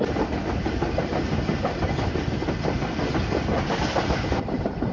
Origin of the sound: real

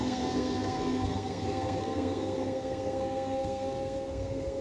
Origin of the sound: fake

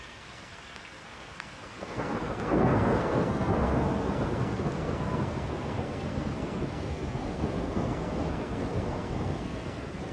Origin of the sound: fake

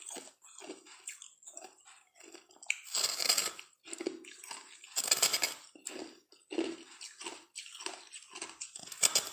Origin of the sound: real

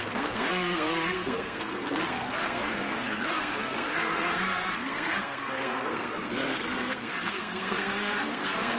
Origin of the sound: fake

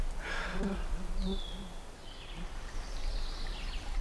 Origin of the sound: real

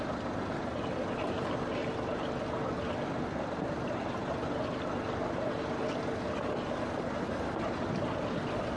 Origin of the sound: real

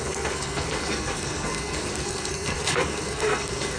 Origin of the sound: fake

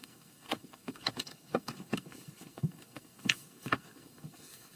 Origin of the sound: fake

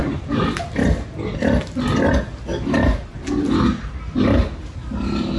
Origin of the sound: real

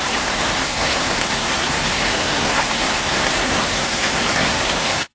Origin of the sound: fake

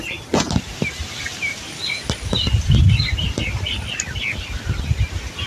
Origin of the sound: real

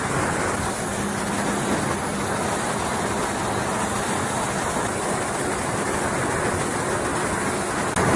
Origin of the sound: real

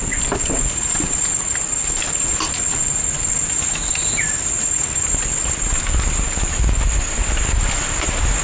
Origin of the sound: real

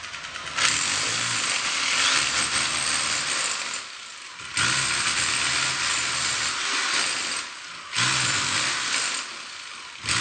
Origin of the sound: real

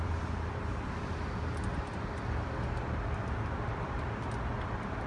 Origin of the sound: real